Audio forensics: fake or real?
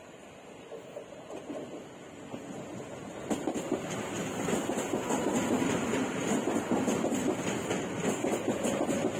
real